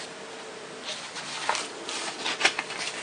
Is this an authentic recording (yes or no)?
yes